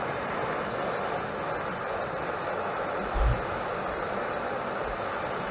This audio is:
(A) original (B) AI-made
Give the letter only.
A